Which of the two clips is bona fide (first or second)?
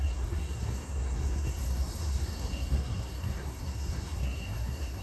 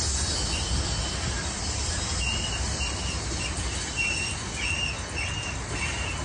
second